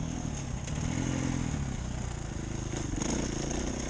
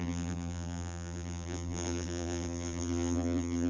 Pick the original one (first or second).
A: first